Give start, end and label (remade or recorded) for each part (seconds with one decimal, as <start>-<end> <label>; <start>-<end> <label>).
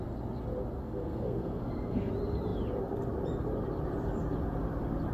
0.0-0.8 recorded; 0.8-2.1 remade; 2.1-5.1 recorded